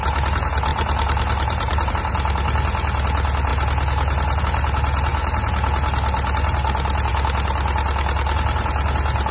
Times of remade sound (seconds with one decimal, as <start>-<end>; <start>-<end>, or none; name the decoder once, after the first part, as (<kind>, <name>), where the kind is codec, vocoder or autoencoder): 0.7-1.9 (vocoder, BigVGAN v2)